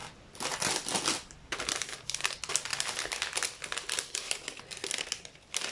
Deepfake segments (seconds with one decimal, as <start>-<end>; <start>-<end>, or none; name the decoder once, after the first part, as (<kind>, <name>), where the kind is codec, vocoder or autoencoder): none